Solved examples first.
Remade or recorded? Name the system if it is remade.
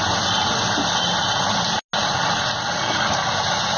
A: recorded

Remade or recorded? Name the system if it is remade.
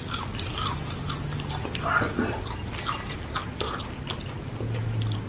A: recorded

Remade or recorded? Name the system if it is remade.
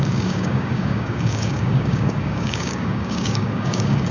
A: remade, codec, DAC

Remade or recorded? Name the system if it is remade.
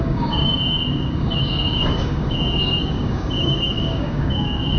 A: remade, codec, DAC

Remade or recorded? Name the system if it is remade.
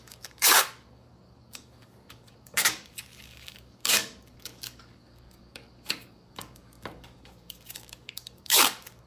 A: remade, codec, DAC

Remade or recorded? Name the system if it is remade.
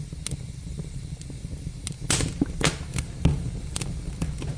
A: recorded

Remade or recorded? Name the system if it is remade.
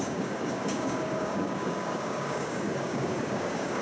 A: remade, codec, DAC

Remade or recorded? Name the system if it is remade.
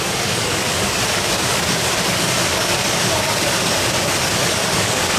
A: remade, codec, DAC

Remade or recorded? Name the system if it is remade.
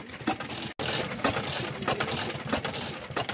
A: recorded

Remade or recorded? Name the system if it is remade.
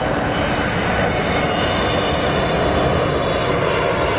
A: recorded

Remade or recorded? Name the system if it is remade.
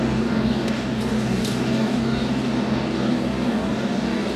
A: remade, codec, DAC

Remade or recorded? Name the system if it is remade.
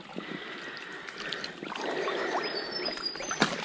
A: recorded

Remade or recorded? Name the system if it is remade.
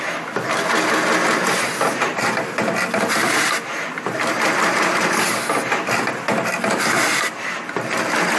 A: recorded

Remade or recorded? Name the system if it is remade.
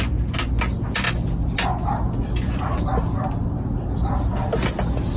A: recorded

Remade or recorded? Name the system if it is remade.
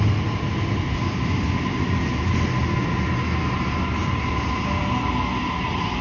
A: recorded